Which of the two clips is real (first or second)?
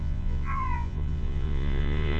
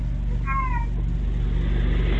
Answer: second